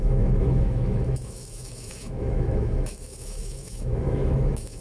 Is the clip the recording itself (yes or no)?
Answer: no